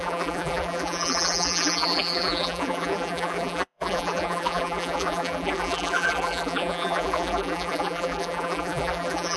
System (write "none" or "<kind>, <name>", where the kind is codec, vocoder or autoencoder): vocoder, BigVGAN v2